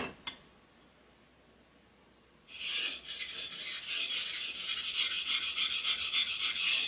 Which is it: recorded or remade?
recorded